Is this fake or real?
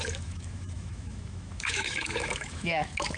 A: fake